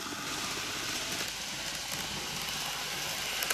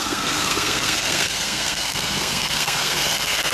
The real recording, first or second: first